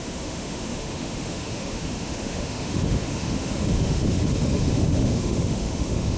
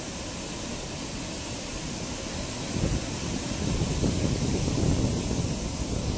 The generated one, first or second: first